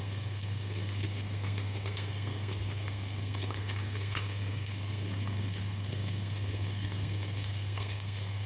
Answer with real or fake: fake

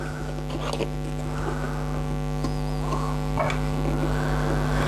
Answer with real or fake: real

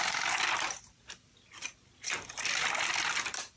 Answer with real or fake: real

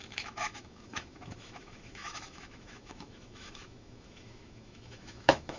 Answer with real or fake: fake